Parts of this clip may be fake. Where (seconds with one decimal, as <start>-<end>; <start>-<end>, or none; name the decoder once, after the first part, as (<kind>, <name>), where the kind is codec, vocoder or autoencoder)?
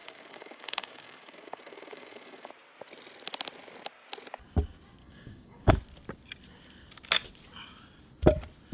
0.0-2.5 (codec, DAC); 5.0-5.7